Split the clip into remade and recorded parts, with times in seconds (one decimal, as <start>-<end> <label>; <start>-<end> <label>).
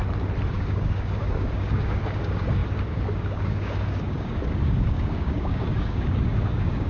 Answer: 0.0-0.5 recorded; 0.5-6.9 remade